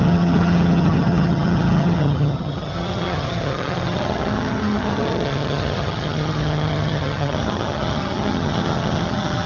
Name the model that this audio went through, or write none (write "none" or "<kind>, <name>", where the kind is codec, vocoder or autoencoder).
vocoder, HiFi-GAN